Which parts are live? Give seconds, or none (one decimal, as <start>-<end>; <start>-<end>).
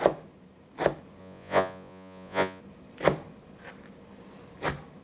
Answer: 0.0-1.2; 2.6-5.0